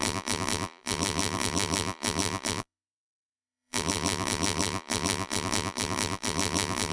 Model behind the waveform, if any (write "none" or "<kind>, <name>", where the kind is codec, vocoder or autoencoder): vocoder, BigVGAN v2